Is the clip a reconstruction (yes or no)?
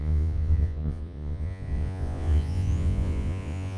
yes